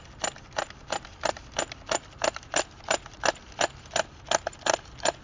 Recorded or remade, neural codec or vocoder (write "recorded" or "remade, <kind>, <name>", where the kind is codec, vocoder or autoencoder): recorded